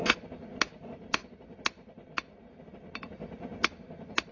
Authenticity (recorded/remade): recorded